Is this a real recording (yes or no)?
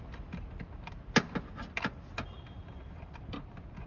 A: yes